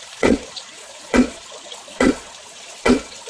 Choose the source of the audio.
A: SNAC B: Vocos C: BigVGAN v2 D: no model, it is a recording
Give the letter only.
B